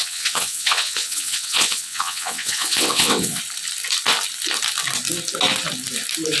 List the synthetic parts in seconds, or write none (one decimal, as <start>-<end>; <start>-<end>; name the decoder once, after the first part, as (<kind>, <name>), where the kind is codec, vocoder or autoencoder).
0.0-3.4 (vocoder, WaveNeXt)